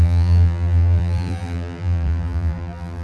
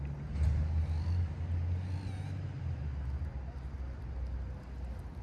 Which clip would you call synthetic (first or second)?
first